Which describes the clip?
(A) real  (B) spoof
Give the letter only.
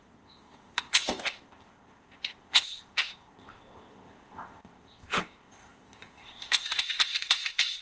B